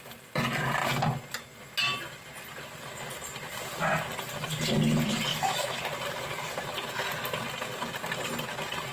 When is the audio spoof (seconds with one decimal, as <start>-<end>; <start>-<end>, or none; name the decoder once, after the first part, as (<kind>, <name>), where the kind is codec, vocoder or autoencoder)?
5.3-5.8 (autoencoder, DAC-VAE)